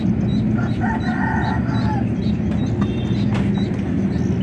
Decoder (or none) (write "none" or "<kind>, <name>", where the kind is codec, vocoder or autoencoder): none